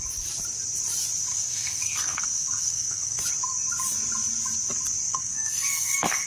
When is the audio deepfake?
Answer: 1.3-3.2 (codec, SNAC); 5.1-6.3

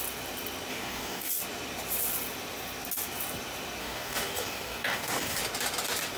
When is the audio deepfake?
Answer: 0.7-1.3 (codec, DAC); 3.8-5.4

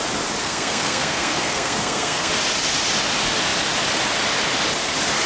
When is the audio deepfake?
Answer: 0.4-2.3 (codec, SNAC)

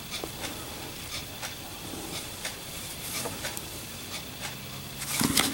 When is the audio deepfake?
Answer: 1.7-4.1 (vocoder, BigVGAN v2)

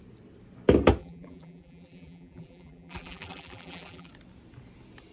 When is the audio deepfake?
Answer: 1.0-4.1 (vocoder, BigVGAN v2)

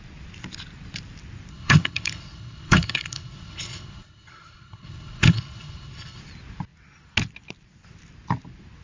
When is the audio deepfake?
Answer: 1.5-6.2 (codec, HILCodec)